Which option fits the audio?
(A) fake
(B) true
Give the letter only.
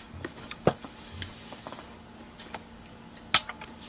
A